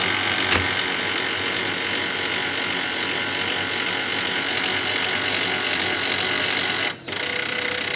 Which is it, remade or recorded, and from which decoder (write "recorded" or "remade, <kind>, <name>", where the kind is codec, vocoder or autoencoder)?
recorded